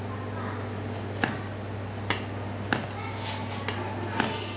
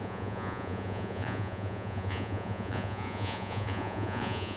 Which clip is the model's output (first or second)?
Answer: second